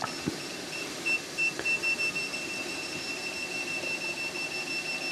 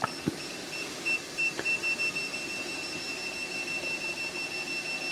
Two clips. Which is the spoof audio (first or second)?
first